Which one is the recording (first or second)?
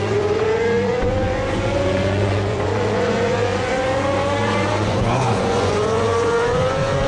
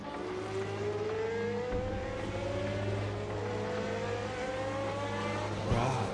second